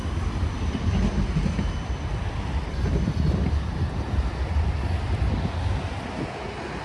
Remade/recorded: recorded